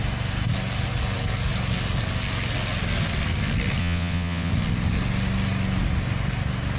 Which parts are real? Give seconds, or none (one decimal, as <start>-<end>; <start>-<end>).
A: 0.0-3.8; 4.5-6.8